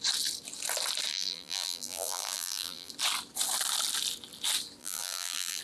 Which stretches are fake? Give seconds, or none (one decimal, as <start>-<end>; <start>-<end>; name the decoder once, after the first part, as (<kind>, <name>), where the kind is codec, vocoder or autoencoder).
1.1-2.9 (vocoder, BigVGAN v2); 4.8-5.6